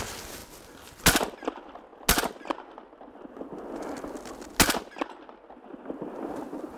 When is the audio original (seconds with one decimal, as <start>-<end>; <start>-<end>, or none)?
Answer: 0.0-6.8